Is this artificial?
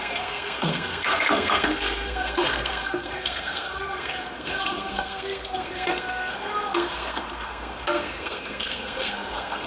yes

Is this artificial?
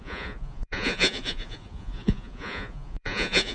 yes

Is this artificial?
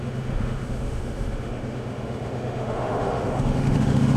yes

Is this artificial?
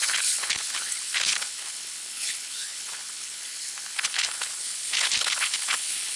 yes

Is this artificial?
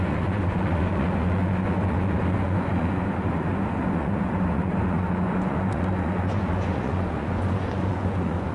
yes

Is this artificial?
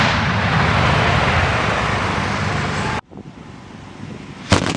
no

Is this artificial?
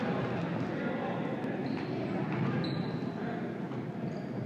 no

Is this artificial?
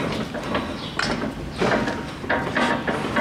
no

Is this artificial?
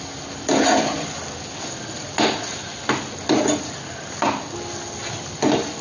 no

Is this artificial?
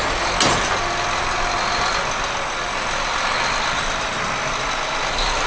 no